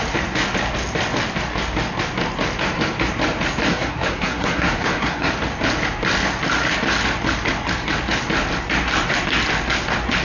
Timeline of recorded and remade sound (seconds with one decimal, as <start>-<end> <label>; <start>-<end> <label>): 0.0-3.7 recorded; 3.7-5.3 remade; 5.3-10.2 recorded